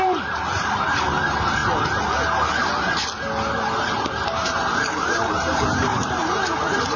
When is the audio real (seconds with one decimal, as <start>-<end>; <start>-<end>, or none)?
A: 1.6-4.1